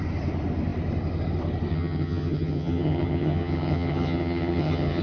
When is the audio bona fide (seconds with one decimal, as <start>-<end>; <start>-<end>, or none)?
0.0-1.7